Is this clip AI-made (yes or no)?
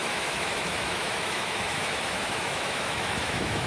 yes